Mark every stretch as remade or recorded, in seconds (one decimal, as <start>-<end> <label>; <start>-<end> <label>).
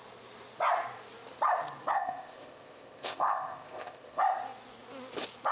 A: 0.0-1.9 recorded; 1.9-4.2 remade; 4.2-5.5 recorded